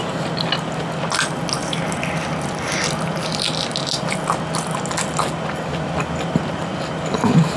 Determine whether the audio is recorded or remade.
recorded